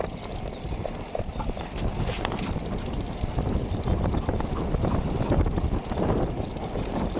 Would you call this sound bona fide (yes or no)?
no